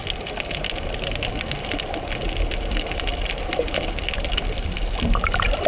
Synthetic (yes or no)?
no